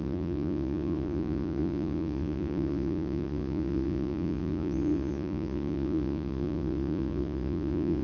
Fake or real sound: fake